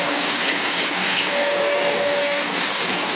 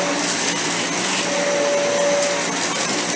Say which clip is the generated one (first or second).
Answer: first